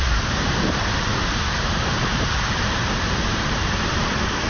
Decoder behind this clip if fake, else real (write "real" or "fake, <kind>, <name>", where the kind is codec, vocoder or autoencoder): fake, vocoder, BigVGAN v2